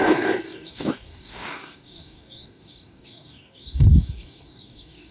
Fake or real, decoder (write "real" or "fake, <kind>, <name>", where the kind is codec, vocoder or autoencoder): fake, codec, DAC